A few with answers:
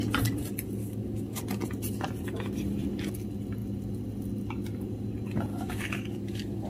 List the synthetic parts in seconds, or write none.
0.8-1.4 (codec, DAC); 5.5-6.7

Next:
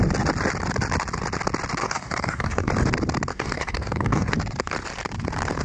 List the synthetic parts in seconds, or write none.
1.8-2.7 (codec, DAC); 3.3-4.3

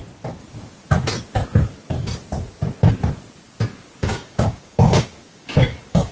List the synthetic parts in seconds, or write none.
4.0-6.1 (codec, DAC)

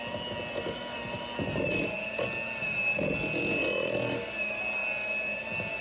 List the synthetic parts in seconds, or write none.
none

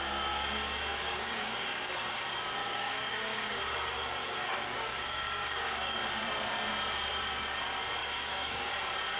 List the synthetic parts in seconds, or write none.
0.9-2.1 (codec, DAC); 2.6-3.6; 4.2-6.0; 8.0-8.7

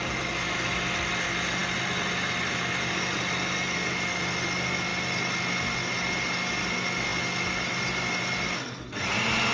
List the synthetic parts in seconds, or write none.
none

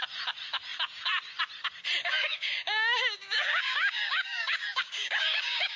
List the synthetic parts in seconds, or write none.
2.0-5.8 (codec, DAC)